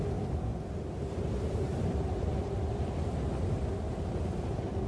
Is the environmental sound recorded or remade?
recorded